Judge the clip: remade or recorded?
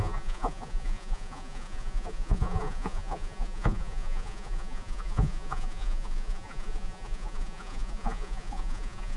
remade